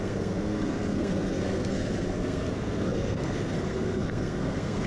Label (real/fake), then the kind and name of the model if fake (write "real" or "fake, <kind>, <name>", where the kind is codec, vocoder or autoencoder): fake, codec, SNAC